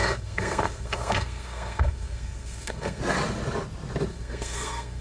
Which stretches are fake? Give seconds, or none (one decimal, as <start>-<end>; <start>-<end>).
0.0-3.0; 4.1-5.0